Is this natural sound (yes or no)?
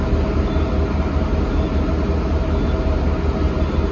yes